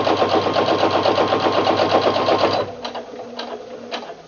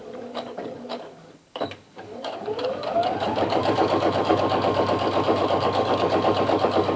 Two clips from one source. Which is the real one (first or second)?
first